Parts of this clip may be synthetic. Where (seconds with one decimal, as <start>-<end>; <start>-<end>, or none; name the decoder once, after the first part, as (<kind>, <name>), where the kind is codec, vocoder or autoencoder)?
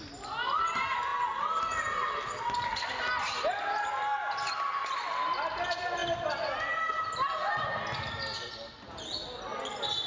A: none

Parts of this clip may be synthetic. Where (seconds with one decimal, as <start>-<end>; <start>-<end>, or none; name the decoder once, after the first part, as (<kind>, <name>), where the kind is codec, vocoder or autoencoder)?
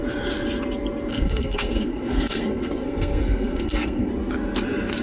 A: 1.1-4.1 (codec, SNAC)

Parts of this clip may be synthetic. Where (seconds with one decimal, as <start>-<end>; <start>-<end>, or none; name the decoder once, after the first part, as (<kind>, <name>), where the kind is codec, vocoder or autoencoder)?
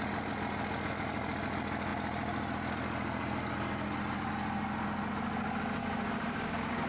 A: 5.8-6.9 (codec, DAC)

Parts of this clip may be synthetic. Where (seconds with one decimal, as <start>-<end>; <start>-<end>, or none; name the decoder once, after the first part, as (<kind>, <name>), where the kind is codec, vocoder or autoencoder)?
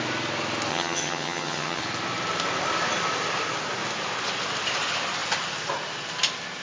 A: 0.7-1.8 (vocoder, HiFi-GAN)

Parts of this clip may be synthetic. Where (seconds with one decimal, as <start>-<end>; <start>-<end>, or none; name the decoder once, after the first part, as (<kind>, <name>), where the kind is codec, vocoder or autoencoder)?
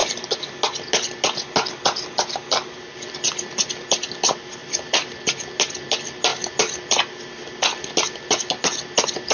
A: none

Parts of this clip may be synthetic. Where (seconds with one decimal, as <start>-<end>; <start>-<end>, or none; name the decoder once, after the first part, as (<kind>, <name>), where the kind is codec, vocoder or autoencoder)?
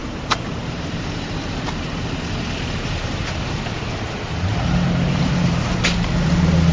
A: none